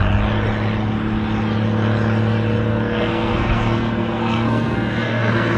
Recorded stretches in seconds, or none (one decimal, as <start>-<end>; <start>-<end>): 0.0-2.7